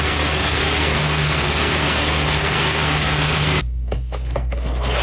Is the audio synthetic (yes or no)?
yes